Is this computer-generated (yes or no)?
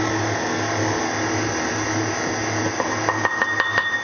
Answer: no